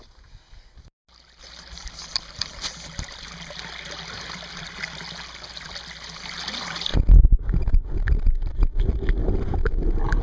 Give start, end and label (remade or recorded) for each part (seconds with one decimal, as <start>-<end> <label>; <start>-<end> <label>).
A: 0.0-10.2 recorded